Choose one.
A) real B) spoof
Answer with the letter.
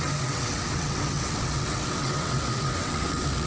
B